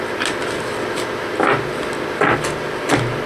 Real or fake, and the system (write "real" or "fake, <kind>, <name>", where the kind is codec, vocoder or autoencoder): real